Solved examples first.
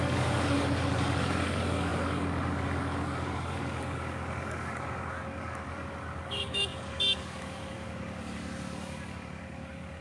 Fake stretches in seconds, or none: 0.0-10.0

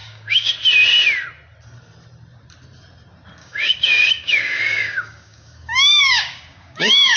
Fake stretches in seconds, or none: 0.0-0.5; 3.4-7.2

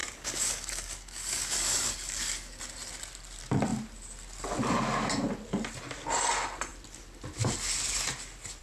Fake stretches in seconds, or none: 0.0-2.6

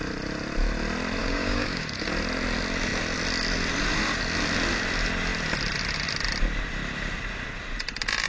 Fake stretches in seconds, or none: 1.2-2.1

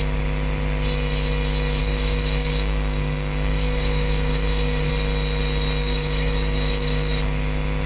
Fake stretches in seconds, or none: 1.8-4.9; 5.8-7.1

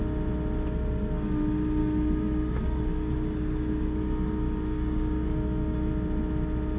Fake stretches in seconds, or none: 1.8-5.9